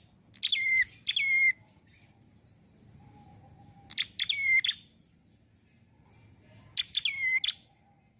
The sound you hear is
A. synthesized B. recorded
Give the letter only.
B